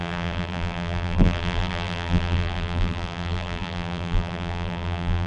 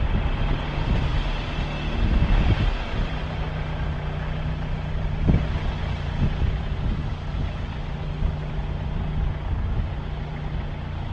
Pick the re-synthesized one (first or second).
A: first